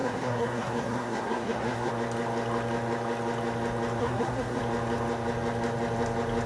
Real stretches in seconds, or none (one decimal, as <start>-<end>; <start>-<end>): 1.9-4.0; 4.6-6.5